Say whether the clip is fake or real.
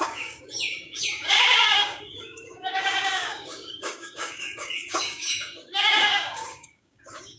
fake